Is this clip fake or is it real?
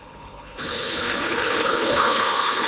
fake